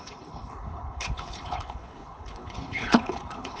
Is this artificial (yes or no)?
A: yes